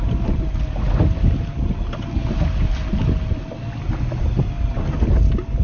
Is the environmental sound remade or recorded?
recorded